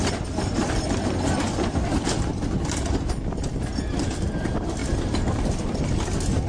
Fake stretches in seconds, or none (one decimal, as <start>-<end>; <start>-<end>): 0.5-3.6; 4.8-5.8